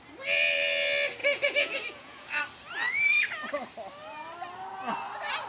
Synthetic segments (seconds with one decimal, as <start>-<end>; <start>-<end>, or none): 1.2-2.4